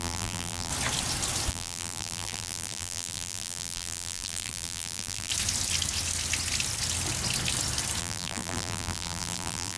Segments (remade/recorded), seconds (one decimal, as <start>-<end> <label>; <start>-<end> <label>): 0.0-0.7 remade; 0.7-1.5 recorded; 1.5-5.3 remade; 5.3-8.0 recorded; 8.0-9.8 remade